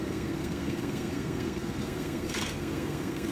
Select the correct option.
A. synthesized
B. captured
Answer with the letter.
A